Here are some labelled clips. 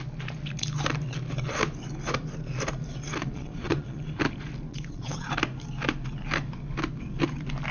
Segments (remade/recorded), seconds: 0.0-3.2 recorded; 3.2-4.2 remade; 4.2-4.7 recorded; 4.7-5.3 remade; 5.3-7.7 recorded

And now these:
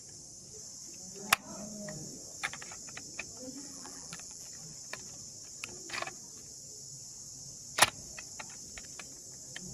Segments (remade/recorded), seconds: 0.0-3.6 recorded; 3.6-4.5 remade; 4.5-9.7 recorded

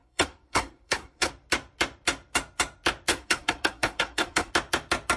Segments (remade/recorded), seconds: 0.0-1.3 remade; 1.3-3.1 recorded; 3.1-4.5 remade; 4.5-5.2 recorded

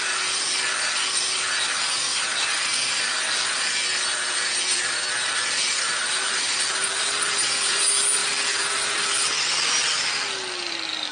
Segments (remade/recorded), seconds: 0.0-11.1 recorded

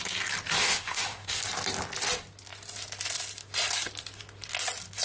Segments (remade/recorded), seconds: 0.0-0.6 recorded; 0.6-1.4 remade; 1.4-5.0 recorded

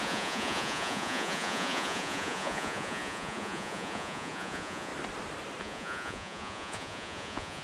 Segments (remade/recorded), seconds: 0.0-4.9 remade; 4.9-5.6 recorded; 5.6-7.6 remade

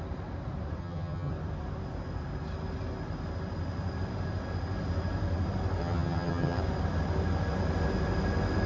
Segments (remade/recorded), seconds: 0.0-0.8 recorded; 0.8-1.3 remade; 1.3-5.8 recorded; 5.8-6.6 remade; 6.6-8.7 recorded